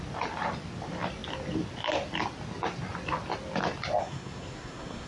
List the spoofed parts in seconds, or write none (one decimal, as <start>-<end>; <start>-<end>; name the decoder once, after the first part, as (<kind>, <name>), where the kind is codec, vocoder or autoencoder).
4.0-5.1 (codec, SNAC)